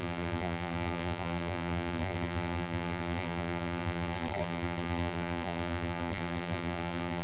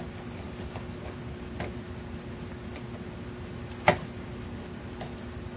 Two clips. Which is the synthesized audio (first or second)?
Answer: first